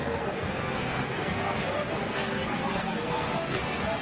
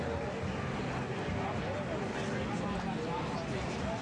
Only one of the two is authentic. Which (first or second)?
second